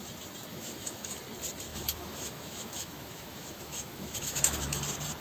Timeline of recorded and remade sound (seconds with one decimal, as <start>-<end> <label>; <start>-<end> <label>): 0.0-0.5 recorded; 0.5-1.2 remade; 1.2-1.7 recorded; 1.7-4.8 remade; 4.8-5.2 recorded